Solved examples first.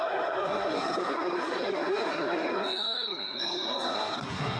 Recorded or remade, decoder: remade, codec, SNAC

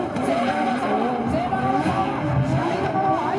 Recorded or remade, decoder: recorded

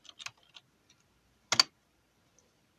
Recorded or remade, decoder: recorded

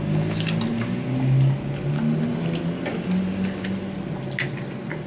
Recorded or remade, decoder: recorded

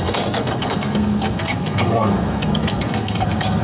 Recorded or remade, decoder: remade, codec, SNAC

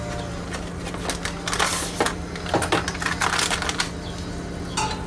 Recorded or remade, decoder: recorded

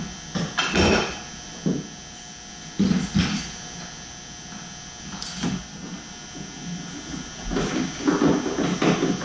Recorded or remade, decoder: recorded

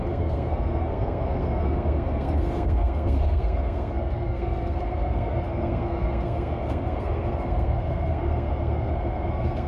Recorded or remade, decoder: remade, codec, SNAC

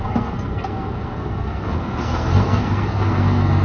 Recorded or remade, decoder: remade, codec, SNAC